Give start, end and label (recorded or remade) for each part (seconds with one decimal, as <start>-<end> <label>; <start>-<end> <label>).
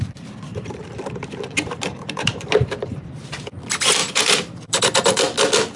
0.0-0.5 recorded; 0.5-3.0 remade; 3.0-4.0 recorded; 4.0-4.8 remade; 4.8-5.8 recorded